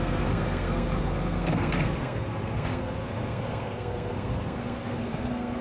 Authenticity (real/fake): fake